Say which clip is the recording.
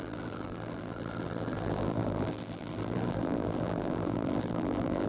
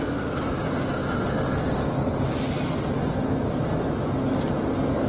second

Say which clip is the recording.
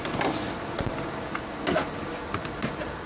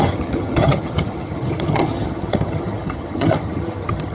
first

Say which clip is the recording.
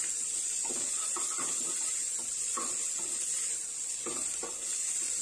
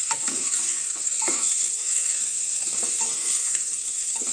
first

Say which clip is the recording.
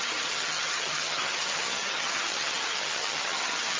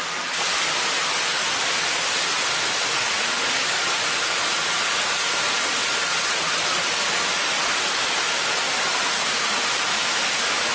second